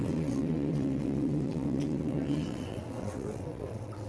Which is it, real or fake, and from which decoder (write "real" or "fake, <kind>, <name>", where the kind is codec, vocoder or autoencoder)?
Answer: fake, vocoder, WaveNeXt